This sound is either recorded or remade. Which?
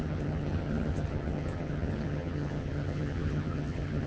remade